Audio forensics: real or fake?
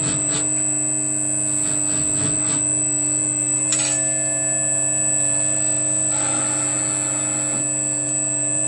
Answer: real